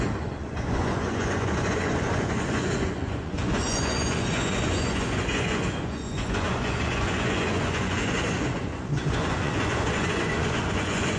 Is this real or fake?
fake